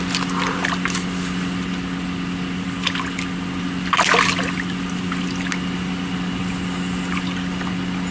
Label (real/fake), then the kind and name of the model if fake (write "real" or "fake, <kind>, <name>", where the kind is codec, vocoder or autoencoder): real